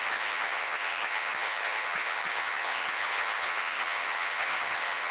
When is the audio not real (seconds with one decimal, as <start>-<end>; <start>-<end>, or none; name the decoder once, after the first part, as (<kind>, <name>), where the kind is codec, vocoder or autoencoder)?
0.0-5.1 (vocoder, HiFi-GAN)